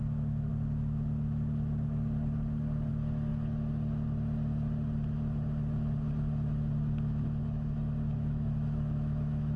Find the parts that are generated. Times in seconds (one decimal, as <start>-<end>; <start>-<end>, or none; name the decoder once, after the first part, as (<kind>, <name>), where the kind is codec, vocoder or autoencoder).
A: 0.0-0.5 (autoencoder, DAC-VAE); 2.9-3.3; 7.4-9.6